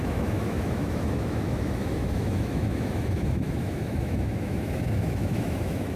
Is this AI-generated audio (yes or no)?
yes